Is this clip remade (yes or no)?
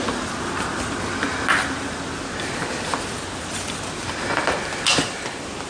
no